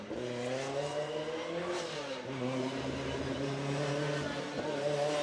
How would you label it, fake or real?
real